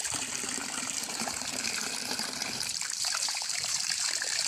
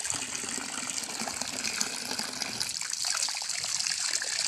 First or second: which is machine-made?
first